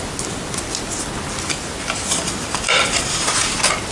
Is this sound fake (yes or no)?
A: no